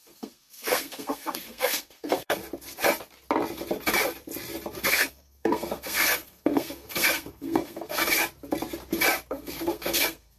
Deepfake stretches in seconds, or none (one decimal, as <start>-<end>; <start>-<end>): 0.0-2.4; 4.8-8.0; 9.3-10.4